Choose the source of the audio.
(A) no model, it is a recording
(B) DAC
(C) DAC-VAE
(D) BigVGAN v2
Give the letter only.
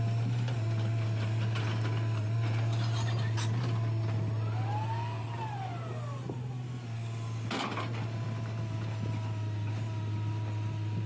A